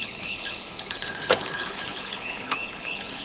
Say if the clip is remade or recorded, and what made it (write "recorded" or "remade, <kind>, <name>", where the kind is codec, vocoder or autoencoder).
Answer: remade, codec, HILCodec